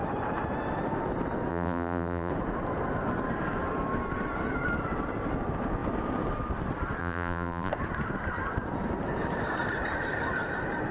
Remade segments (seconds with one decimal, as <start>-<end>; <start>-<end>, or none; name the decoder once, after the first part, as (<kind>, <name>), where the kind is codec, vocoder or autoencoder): 1.5-2.3 (vocoder, BigVGAN v2); 7.0-7.7